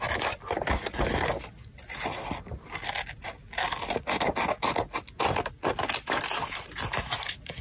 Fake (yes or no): no